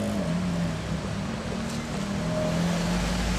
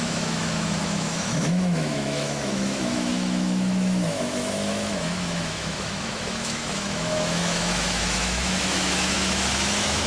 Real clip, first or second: first